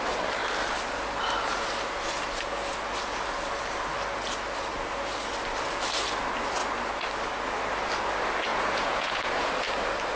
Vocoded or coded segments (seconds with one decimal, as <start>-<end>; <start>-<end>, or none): 8.5-9.5